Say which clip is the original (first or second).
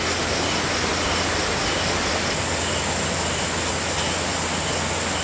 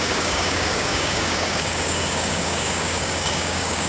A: first